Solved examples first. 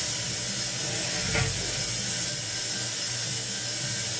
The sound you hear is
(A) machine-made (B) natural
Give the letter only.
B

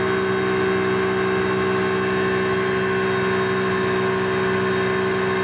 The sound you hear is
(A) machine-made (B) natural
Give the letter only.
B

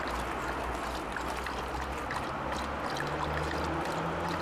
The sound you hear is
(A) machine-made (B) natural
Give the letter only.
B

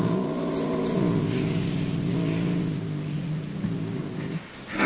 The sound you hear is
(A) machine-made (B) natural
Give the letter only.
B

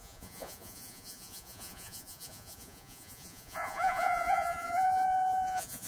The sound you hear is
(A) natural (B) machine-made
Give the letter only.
B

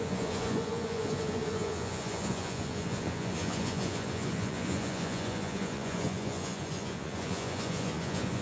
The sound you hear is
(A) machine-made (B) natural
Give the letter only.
A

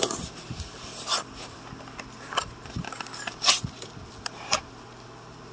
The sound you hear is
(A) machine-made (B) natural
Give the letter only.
B